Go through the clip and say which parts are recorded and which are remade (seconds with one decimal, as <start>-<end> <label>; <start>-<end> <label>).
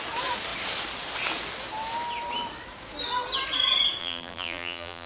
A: 0.0-4.0 recorded; 4.0-5.1 remade